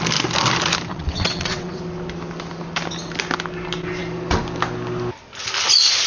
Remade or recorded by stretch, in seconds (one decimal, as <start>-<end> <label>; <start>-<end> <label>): 0.0-0.9 recorded; 0.9-1.8 remade; 1.8-6.1 recorded